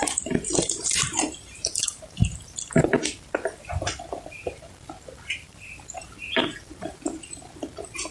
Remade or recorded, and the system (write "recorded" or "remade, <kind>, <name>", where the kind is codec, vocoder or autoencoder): remade, vocoder, BigVGAN v2